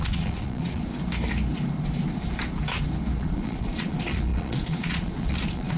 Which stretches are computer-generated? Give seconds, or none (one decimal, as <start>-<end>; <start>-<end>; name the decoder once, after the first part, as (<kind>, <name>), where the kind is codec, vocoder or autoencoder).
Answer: 0.0-0.8 (vocoder, Vocos); 3.2-5.8